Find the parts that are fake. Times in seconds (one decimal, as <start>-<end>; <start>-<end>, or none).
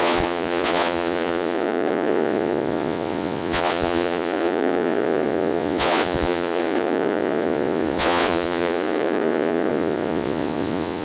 0.0-11.0